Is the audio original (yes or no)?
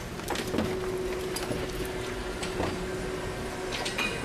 yes